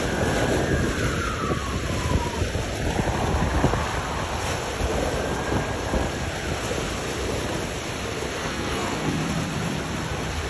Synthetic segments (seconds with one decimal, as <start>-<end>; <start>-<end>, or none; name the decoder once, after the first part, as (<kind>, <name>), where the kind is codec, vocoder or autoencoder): 8.4-9.2 (codec, SNAC)